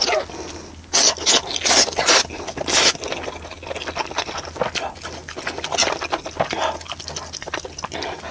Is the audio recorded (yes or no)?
yes